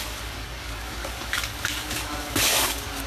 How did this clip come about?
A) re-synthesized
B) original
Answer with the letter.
A